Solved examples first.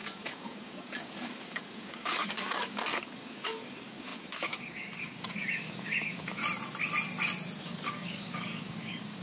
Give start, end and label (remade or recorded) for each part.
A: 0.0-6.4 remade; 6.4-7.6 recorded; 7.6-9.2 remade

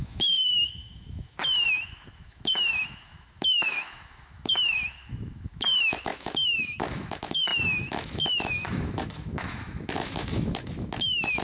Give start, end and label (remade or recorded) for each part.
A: 0.0-11.4 remade

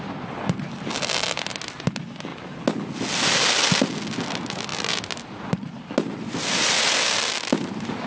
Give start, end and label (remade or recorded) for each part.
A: 0.0-8.1 recorded

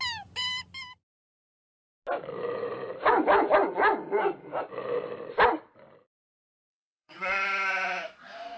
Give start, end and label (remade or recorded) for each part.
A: 0.0-6.7 recorded; 6.7-7.4 remade; 7.4-8.6 recorded